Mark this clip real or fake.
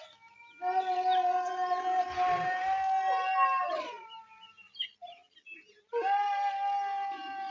real